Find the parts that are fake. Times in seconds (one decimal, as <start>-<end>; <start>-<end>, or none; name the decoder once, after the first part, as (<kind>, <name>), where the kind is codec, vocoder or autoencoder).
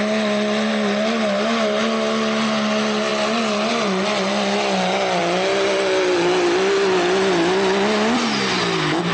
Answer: none